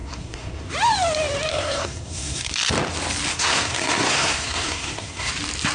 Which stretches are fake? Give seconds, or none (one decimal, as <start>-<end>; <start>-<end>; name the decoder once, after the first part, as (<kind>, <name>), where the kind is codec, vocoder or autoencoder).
0.0-0.7 (codec, SNAC); 1.5-2.5; 3.3-5.3